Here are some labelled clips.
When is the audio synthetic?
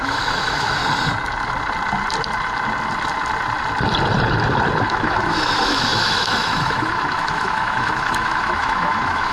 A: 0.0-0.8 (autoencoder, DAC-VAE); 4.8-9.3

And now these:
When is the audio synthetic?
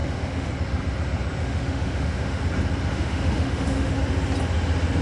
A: 0.0-0.5 (autoencoder, DAC-VAE); 1.4-2.4; 2.9-3.9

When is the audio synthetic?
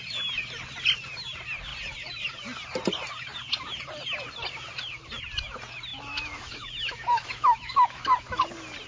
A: 5.9-8.4 (autoencoder, DAC-VAE)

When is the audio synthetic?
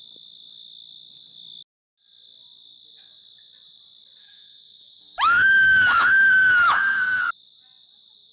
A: 4.2-7.2 (autoencoder, DAC-VAE)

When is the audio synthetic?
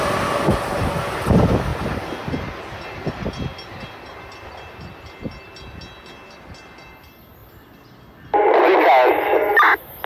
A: none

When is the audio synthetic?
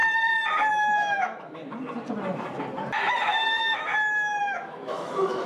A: 0.7-1.6 (autoencoder, DAC-VAE); 3.3-3.9; 4.4-5.5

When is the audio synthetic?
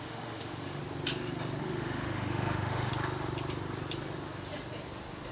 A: 0.0-0.8 (autoencoder, DAC-VAE); 1.6-2.9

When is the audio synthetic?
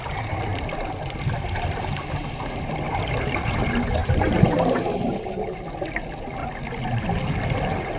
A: none